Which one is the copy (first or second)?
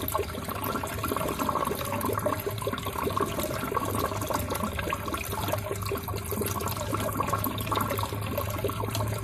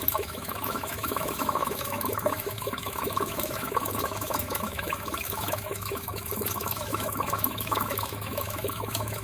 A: second